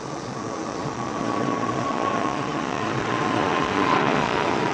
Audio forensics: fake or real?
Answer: fake